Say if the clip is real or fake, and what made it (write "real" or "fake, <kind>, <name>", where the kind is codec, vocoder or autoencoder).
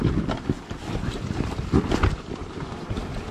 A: real